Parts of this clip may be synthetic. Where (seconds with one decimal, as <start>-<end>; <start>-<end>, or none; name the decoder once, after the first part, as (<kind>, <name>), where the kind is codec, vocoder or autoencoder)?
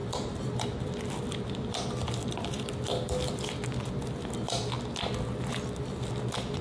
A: 0.0-4.0 (vocoder, BigVGAN v2)